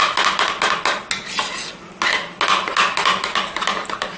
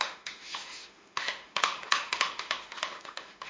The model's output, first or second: second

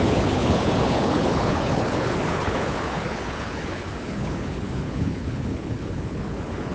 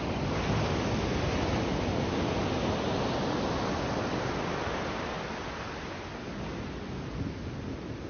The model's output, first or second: first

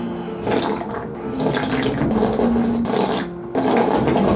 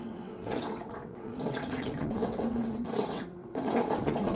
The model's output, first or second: second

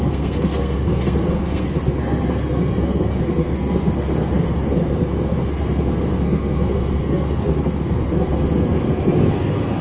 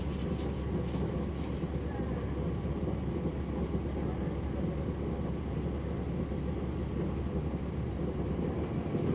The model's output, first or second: first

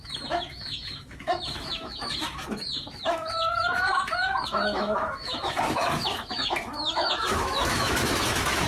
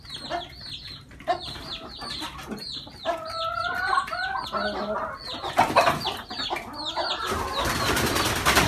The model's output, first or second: first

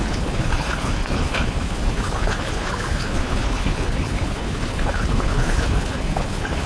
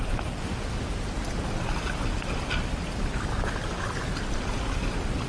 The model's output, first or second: first